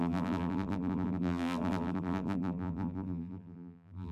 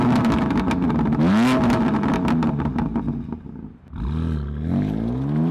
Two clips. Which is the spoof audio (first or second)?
first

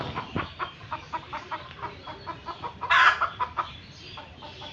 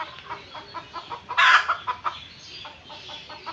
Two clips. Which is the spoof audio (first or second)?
first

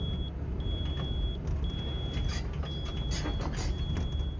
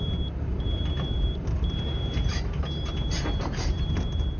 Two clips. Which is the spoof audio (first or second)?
second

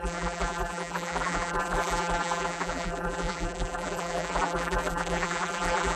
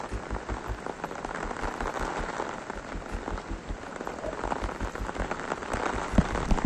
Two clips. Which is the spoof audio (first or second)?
first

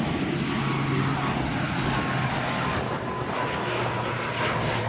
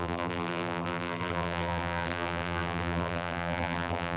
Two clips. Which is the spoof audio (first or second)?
second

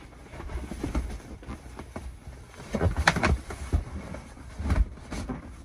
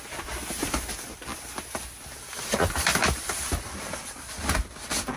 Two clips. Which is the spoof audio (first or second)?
first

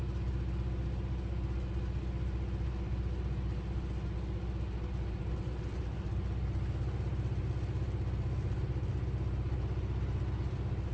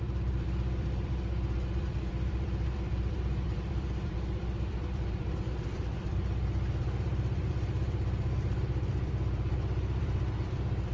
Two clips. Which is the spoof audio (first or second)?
second